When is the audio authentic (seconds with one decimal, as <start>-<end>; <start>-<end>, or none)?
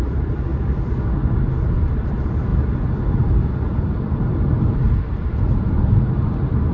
0.5-1.4; 2.5-3.8